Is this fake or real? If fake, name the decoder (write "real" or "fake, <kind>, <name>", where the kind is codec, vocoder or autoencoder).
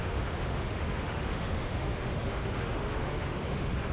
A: fake, autoencoder, DAC-VAE